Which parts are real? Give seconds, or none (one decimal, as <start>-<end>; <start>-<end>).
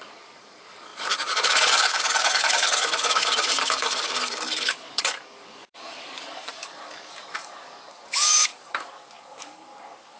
none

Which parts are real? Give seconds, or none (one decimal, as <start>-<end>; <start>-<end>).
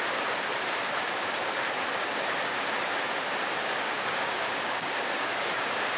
0.0-3.6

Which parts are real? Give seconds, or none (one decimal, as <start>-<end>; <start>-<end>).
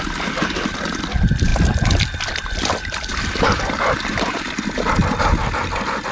0.0-6.1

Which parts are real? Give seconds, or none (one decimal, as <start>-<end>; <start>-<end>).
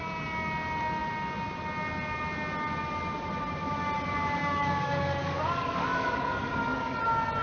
0.0-4.4; 7.0-7.4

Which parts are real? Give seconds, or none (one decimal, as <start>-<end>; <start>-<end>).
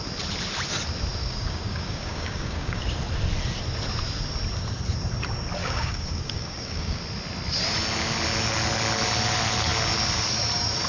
0.0-1.2; 2.8-5.6; 7.0-10.9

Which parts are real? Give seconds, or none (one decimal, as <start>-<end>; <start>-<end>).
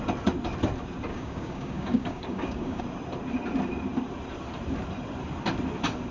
0.0-1.1; 2.8-6.1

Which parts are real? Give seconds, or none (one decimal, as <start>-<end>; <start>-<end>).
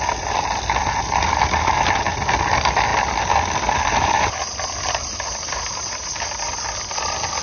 0.0-7.4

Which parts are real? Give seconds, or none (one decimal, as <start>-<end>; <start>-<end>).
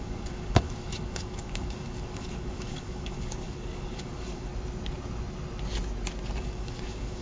4.5-6.4